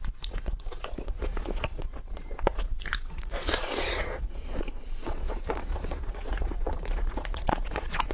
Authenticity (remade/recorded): remade